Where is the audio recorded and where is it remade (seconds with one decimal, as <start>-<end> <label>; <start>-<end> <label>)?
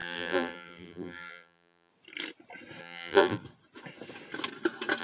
0.0-1.9 remade; 1.9-2.8 recorded; 2.8-3.4 remade; 3.4-5.0 recorded